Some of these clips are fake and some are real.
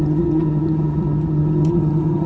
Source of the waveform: fake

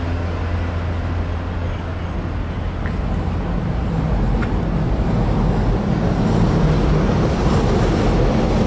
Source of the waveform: real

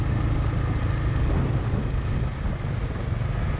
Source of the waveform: real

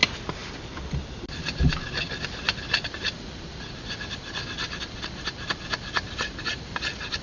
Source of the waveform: real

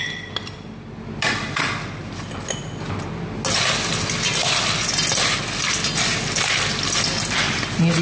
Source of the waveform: real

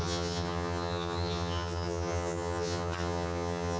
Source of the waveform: fake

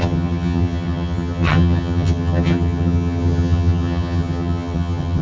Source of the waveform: fake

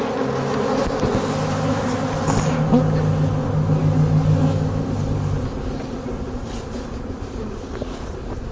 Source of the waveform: real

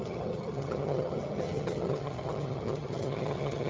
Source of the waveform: fake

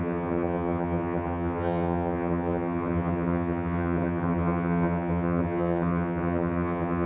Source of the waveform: fake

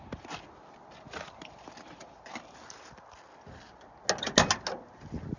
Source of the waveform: real